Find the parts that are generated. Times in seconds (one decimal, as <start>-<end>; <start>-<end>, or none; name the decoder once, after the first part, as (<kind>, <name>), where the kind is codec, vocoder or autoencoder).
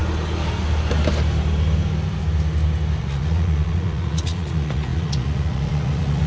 3.0-6.3 (vocoder, Vocos)